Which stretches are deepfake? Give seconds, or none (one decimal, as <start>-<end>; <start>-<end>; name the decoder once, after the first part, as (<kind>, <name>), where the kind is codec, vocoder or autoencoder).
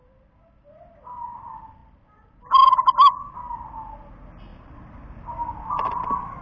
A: 4.5-5.6 (vocoder, BigVGAN v2)